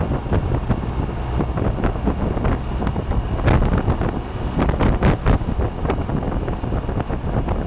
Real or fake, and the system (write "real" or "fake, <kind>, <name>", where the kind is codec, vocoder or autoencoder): real